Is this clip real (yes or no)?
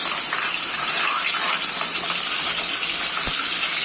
yes